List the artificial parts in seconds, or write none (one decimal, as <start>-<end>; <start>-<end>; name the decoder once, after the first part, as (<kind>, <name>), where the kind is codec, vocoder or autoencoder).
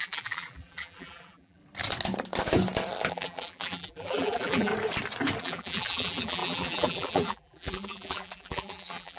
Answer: 0.0-1.6 (vocoder, BigVGAN v2); 3.1-4.7; 5.4-9.2